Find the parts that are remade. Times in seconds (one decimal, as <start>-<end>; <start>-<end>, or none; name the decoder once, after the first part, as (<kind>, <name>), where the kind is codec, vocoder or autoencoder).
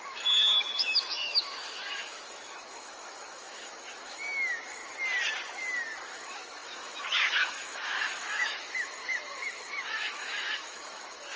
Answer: 0.0-4.8 (autoencoder, DAC-VAE); 6.1-11.4